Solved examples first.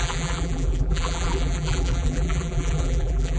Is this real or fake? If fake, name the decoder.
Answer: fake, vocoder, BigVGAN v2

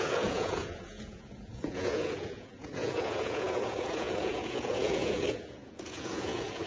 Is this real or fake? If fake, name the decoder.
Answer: fake, vocoder, Vocos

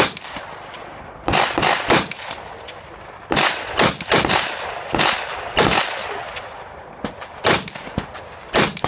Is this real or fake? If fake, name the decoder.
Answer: real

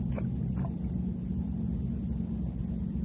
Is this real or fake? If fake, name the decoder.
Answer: fake, vocoder, BigVGAN v2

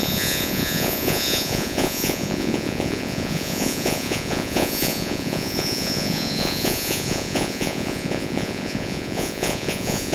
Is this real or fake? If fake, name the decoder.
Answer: fake, vocoder, Vocos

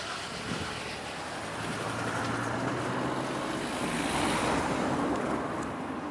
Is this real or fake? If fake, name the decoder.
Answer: real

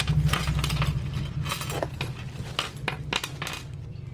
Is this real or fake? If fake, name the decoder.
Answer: real